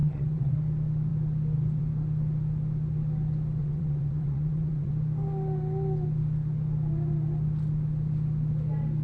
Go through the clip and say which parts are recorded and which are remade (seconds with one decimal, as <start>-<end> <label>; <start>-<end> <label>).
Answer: 0.0-0.5 remade; 0.5-3.6 recorded; 3.6-4.9 remade; 4.9-9.0 recorded